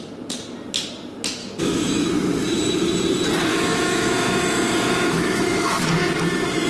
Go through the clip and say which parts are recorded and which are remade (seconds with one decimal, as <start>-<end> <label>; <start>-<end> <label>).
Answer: 0.0-1.4 recorded; 1.4-2.1 remade; 2.1-3.5 recorded; 3.5-5.7 remade; 5.7-6.7 recorded